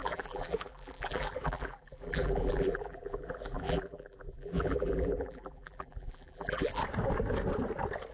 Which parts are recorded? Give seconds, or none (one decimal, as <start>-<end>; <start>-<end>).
6.8-8.1

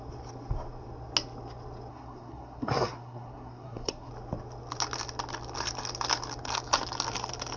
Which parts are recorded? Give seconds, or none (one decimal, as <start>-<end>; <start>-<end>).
0.0-1.9; 4.1-7.6